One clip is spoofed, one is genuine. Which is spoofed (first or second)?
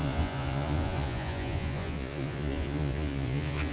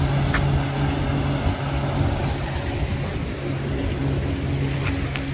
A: first